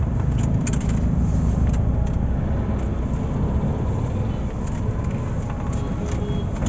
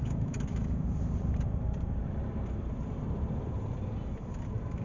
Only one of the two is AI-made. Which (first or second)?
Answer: second